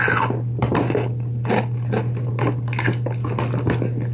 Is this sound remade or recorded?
recorded